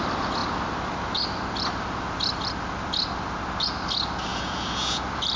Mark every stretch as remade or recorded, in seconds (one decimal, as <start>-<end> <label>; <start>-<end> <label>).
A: 0.0-4.3 recorded; 4.3-5.0 remade; 5.0-5.4 recorded